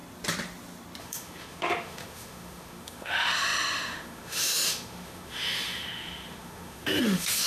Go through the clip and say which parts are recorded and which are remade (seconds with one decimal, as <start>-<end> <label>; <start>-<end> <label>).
0.0-1.0 recorded; 1.0-7.5 remade

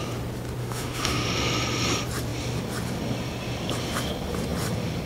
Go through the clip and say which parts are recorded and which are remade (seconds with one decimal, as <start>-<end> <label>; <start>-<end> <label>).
0.0-0.6 recorded; 0.6-1.3 remade; 1.3-5.1 recorded

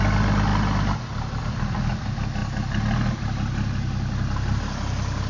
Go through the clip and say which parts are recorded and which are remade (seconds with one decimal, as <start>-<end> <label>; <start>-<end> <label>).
0.0-5.3 recorded

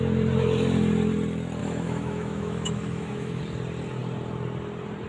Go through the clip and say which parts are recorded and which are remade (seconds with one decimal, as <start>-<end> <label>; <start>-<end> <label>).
0.0-1.6 recorded; 1.6-3.4 remade; 3.4-5.1 recorded

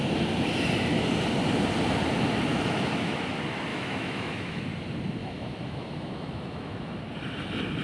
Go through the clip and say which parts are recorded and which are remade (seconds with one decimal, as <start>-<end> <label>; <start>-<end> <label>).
0.0-2.5 recorded; 2.5-3.2 remade; 3.2-3.7 recorded; 3.7-4.6 remade; 4.6-5.2 recorded; 5.2-7.0 remade; 7.0-7.8 recorded

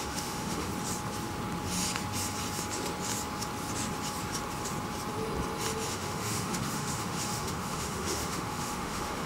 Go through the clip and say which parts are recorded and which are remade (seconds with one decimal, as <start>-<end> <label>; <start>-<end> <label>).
0.0-0.7 remade; 0.7-5.9 recorded; 5.9-9.3 remade